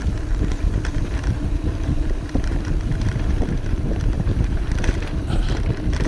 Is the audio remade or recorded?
remade